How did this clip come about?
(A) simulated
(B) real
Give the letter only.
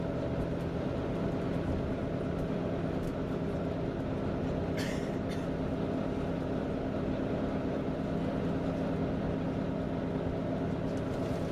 B